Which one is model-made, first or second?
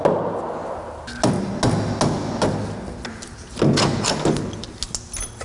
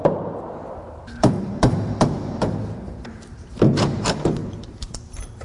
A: second